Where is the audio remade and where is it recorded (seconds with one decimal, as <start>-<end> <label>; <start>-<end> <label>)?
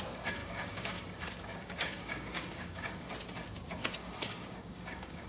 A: 0.0-0.4 recorded; 0.4-1.0 remade; 1.0-1.6 recorded; 1.6-3.1 remade; 3.1-3.8 recorded; 3.8-5.3 remade